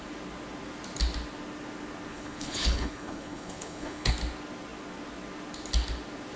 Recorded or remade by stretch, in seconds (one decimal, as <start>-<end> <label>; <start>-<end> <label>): 0.0-2.1 recorded; 2.1-4.1 remade; 4.1-6.4 recorded